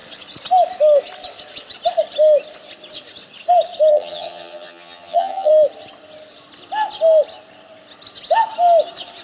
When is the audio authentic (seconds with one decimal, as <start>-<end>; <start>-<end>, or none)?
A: 0.0-3.9; 5.5-9.2